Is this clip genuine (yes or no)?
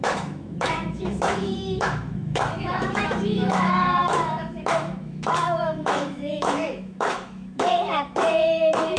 no